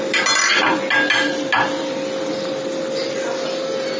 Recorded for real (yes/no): yes